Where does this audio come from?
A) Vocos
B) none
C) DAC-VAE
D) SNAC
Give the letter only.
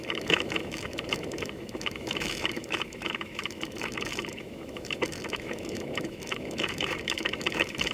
C